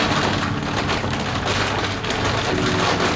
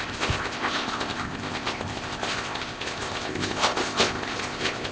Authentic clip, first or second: first